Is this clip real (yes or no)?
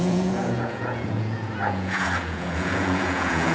no